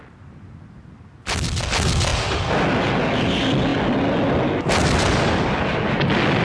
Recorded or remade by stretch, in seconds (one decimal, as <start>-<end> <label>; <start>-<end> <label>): 0.0-6.4 recorded